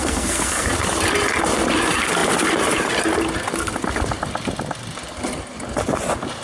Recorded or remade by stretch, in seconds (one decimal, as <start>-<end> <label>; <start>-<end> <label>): 0.0-0.7 remade; 0.7-6.4 recorded